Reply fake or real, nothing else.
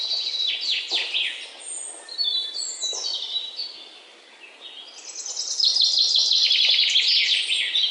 real